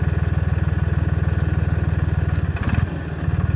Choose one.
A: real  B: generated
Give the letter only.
A